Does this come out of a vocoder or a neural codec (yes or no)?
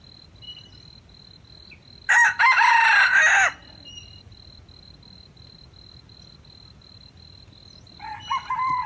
no